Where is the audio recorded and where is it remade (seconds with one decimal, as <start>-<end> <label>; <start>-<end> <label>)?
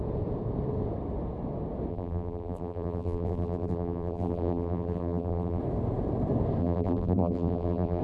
0.0-1.9 recorded; 1.9-5.6 remade; 5.6-6.6 recorded; 6.6-8.0 remade